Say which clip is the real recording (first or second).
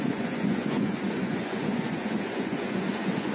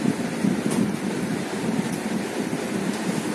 second